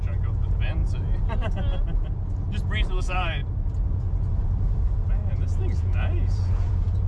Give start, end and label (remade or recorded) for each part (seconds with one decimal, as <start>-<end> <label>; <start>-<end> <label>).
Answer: 0.0-0.8 remade; 0.8-3.0 recorded; 3.0-3.4 remade; 3.4-5.3 recorded; 5.3-7.1 remade